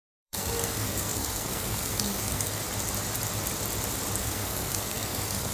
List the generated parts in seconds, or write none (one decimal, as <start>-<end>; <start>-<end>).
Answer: 0.0-2.6; 4.2-5.5